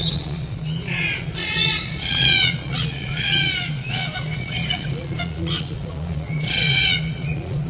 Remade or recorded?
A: remade